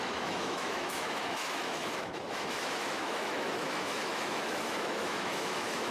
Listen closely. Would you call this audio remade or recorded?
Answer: remade